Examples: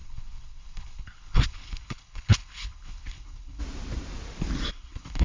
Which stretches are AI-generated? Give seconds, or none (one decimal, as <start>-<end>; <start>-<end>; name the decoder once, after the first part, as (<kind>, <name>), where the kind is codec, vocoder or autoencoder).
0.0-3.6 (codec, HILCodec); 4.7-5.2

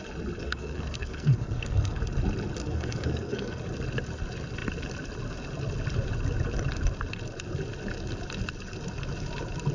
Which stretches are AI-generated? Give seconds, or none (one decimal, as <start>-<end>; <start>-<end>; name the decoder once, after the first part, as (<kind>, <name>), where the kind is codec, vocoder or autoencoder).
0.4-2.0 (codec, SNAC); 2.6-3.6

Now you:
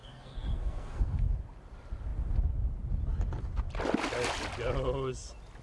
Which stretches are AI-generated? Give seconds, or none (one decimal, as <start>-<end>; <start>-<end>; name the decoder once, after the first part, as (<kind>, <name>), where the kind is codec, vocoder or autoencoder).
0.0-1.3 (codec, SNAC)